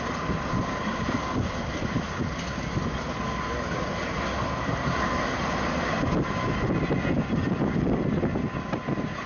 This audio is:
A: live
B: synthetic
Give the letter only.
A